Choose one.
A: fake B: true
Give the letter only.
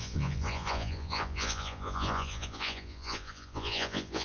A